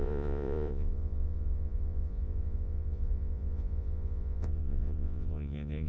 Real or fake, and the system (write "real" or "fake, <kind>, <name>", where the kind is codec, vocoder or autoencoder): fake, vocoder, Vocos